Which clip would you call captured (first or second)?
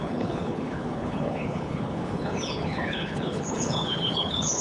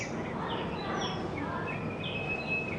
second